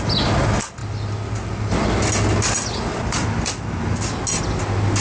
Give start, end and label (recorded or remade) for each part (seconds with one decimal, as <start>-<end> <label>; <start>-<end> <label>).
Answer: 0.0-5.0 recorded